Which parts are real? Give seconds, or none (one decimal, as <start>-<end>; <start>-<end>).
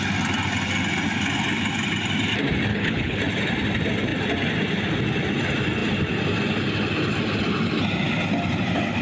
0.0-2.7; 3.2-9.0